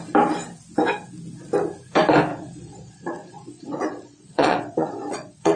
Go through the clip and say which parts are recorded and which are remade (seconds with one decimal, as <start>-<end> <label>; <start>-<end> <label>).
0.0-2.3 recorded; 2.3-5.6 remade